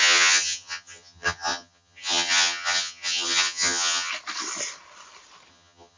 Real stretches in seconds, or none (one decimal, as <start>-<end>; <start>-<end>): 4.1-5.5